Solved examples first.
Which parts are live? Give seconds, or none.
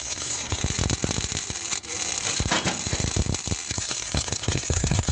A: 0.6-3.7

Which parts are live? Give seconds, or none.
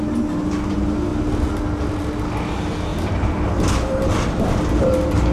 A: 0.0-5.3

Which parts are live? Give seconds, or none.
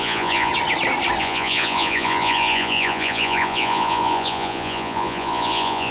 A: 0.5-1.2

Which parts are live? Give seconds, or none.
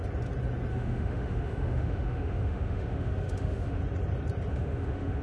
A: 0.0-0.7; 3.8-4.5